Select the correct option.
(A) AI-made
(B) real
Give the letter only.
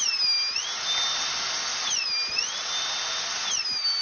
B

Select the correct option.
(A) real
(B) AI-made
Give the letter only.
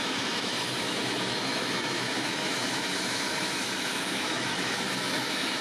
B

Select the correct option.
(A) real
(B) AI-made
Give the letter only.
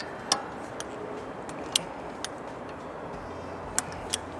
A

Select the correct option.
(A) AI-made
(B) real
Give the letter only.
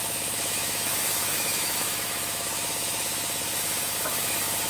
A